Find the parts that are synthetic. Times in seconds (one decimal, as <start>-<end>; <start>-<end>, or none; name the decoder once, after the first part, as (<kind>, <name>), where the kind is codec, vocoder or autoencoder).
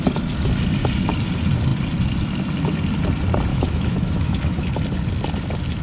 3.5-4.7 (autoencoder, DAC-VAE)